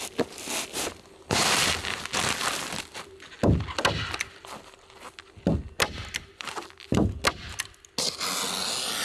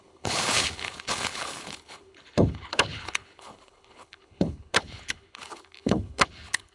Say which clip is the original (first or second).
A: first